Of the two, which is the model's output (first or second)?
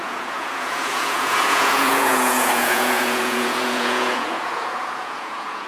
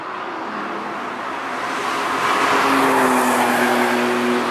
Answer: first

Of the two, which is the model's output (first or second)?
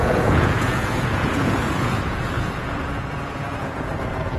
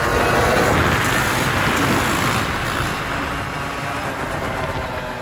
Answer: first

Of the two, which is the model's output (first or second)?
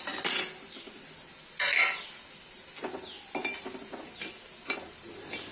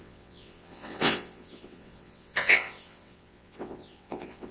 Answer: second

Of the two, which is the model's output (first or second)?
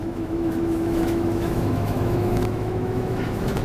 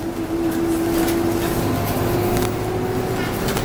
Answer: first